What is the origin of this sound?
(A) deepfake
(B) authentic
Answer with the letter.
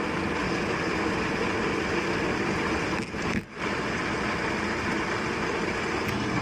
B